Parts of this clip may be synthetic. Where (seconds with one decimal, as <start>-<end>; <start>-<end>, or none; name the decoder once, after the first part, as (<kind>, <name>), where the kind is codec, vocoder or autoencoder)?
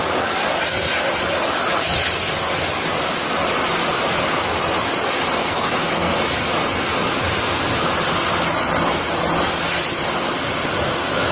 5.4-6.2 (codec, SNAC)